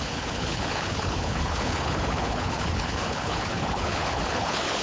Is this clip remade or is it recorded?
remade